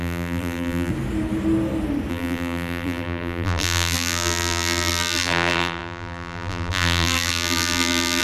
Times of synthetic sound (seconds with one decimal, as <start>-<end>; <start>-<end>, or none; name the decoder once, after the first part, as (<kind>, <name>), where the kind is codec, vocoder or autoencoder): 0.0-0.9 (vocoder, BigVGAN v2); 2.1-8.2